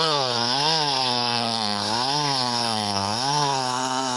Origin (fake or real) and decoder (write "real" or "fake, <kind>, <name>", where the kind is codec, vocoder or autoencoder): fake, codec, SNAC